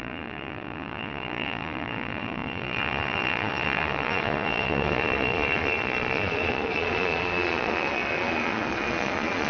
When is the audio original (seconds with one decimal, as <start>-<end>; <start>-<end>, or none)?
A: none